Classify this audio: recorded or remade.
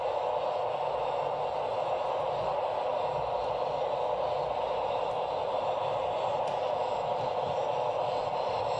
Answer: recorded